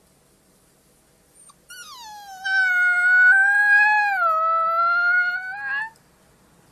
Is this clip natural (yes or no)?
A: yes